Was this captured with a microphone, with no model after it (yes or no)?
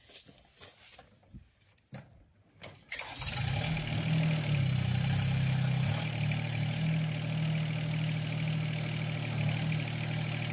yes